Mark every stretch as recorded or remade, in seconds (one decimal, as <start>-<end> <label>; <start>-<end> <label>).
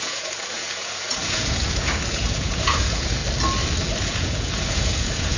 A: 0.0-3.2 remade; 3.2-4.0 recorded; 4.0-5.4 remade